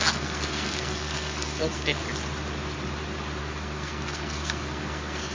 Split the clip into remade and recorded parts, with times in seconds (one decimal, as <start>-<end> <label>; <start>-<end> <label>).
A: 0.0-2.0 remade; 2.0-3.4 recorded; 3.4-5.3 remade